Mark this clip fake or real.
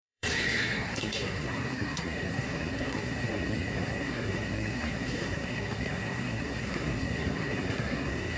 fake